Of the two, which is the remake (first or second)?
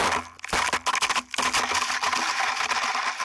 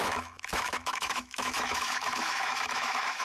second